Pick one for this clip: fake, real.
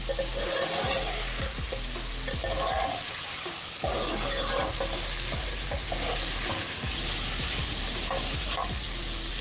real